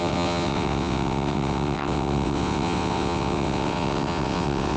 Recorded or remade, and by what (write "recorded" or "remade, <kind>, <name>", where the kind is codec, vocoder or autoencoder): remade, vocoder, WaveNeXt